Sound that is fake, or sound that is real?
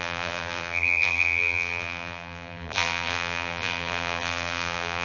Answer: fake